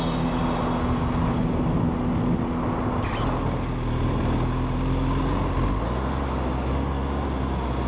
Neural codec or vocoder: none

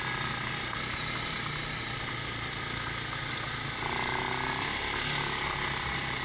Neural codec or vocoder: none